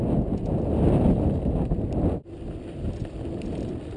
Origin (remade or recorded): recorded